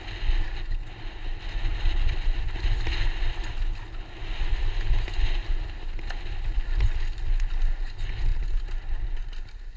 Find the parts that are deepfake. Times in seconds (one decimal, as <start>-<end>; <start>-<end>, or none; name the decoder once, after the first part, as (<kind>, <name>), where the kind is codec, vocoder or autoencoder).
1.7-3.4 (vocoder, BigVGAN v2)